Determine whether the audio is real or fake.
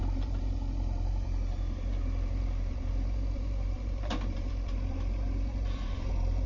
fake